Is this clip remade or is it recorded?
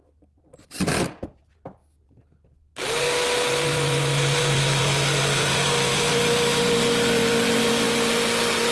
recorded